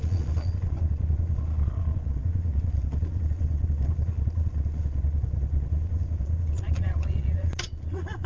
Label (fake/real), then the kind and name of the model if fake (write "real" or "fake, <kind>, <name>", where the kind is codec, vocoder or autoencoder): fake, vocoder, Vocos